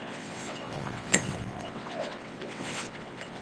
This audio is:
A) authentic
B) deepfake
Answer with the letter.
B